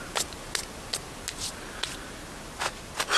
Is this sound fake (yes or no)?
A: no